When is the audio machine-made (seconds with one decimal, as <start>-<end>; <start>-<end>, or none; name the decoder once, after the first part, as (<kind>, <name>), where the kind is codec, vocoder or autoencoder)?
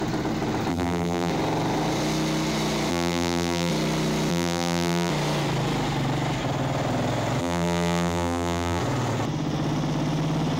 0.7-1.3 (vocoder, BigVGAN v2); 2.9-3.7; 4.3-5.1; 7.4-8.8